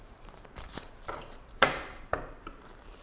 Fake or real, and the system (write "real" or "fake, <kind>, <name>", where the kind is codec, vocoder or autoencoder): fake, vocoder, BigVGAN v2